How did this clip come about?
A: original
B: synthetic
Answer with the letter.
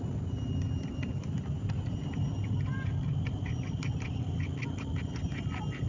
A